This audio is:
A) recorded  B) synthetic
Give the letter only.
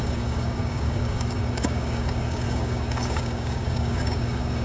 B